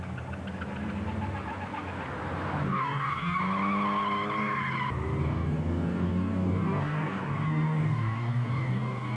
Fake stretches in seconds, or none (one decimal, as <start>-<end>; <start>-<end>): 2.7-3.4; 5.2-9.2